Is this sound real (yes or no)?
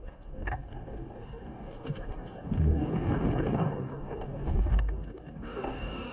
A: no